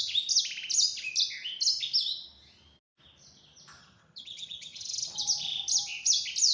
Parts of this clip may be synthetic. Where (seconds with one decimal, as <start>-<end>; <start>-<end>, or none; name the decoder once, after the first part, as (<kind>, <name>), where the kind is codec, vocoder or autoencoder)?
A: 3.8-5.2 (vocoder, HiFi-GAN)

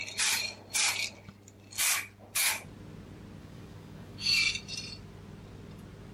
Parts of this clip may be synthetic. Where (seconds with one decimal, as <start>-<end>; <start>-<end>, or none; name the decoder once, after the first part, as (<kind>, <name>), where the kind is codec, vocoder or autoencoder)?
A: 3.4-4.6 (codec, DAC)

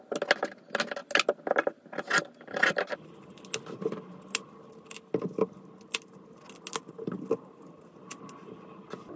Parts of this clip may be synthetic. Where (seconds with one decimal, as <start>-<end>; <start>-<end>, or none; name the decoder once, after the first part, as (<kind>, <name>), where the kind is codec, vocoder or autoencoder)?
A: none